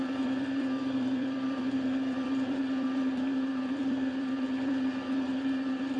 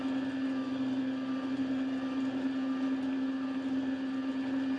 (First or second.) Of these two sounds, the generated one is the first